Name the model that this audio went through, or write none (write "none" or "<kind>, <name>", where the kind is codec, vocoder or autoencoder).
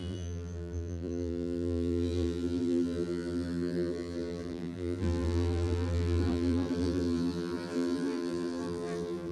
vocoder, BigVGAN v2